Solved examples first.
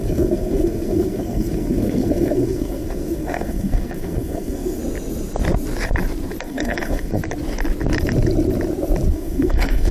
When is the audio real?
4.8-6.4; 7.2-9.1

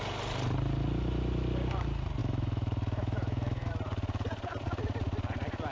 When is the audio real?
0.0-2.2; 3.7-5.7

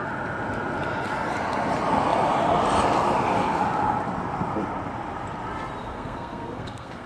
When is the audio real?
0.0-5.8

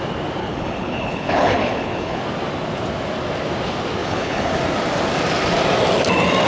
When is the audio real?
0.0-0.4; 2.2-4.0; 4.5-6.5